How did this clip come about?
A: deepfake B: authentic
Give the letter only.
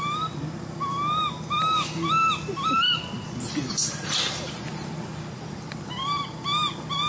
B